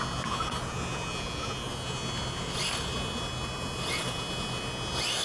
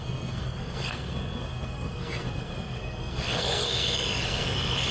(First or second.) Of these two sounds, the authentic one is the first